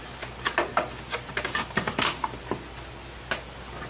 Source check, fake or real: real